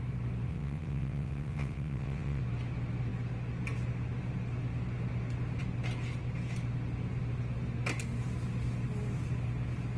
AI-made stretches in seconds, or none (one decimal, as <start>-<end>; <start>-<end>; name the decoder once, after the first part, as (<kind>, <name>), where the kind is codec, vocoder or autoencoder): 0.5-2.4 (vocoder, WaveNeXt)